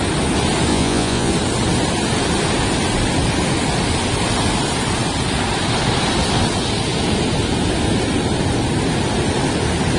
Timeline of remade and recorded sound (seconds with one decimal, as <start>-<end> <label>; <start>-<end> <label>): 0.0-0.7 recorded; 0.7-1.3 remade; 1.3-10.0 recorded